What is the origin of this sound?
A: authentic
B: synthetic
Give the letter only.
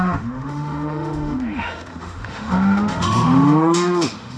B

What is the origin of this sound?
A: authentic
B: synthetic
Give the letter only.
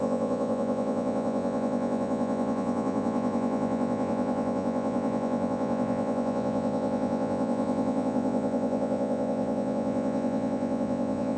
B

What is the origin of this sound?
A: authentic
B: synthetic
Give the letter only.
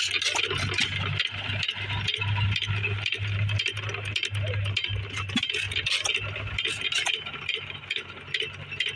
A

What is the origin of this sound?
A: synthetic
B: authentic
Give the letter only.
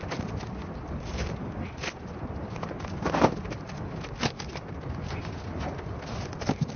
B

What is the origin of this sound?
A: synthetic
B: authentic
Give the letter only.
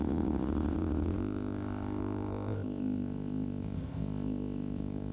A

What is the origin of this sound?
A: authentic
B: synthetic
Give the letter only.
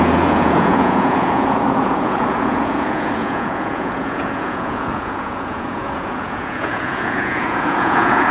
B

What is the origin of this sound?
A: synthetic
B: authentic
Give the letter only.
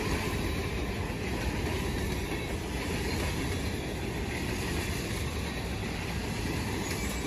A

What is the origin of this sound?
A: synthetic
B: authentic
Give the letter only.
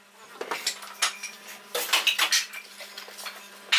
B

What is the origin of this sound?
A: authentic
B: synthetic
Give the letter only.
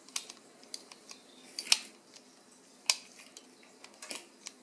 A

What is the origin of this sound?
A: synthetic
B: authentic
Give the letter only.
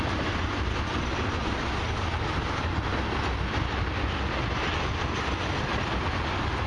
B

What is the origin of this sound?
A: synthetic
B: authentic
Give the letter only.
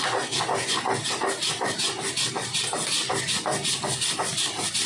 B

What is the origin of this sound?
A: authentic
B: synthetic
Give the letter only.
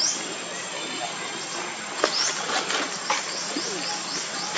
A